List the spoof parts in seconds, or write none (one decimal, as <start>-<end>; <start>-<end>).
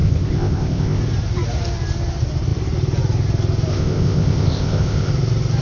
0.0-1.0; 3.7-5.1